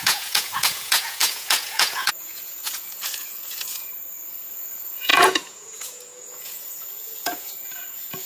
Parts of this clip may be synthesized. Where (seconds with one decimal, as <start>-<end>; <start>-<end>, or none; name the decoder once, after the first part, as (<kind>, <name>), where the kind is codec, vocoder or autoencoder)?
0.0-3.9 (vocoder, Vocos); 4.4-8.3